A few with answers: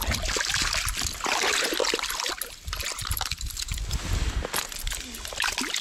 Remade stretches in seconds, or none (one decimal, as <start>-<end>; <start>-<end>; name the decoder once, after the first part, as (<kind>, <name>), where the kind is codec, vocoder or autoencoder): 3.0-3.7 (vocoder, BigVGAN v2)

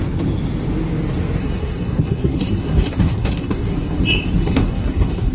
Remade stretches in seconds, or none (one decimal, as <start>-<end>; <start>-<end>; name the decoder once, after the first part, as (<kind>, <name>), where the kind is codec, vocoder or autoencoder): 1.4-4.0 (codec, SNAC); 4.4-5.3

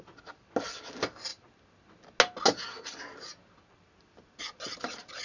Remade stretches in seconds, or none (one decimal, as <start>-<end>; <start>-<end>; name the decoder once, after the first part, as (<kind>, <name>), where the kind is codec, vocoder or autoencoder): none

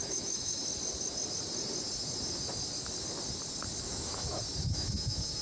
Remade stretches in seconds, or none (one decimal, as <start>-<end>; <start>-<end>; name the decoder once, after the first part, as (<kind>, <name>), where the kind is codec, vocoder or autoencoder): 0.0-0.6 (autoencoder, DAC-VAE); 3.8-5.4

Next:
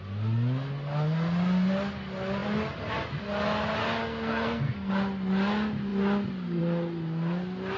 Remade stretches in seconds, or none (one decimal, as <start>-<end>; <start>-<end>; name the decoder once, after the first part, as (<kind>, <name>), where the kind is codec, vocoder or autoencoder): 4.0-4.9 (codec, SNAC)

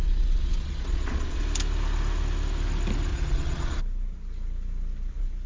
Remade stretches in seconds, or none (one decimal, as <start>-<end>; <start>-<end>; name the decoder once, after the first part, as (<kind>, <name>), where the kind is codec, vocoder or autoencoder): 0.0-1.4 (vocoder, Vocos); 3.1-3.8